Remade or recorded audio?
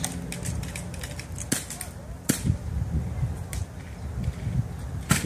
recorded